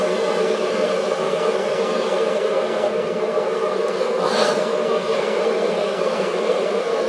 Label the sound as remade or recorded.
remade